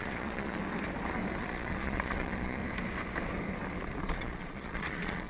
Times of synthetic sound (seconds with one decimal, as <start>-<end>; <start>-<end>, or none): 0.0-0.6; 1.4-2.6; 4.1-5.3